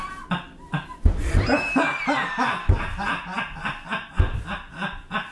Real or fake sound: real